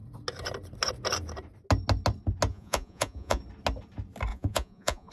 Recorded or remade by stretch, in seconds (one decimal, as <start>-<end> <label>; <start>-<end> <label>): 0.0-2.5 recorded; 2.5-3.4 remade; 3.4-4.3 recorded; 4.3-5.1 remade